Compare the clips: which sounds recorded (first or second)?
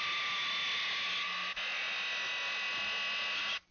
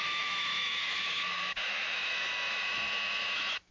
first